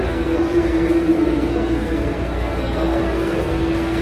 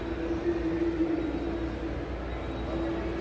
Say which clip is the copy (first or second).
first